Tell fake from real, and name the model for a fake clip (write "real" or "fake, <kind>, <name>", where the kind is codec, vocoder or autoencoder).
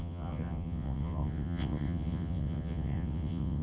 fake, vocoder, WaveNeXt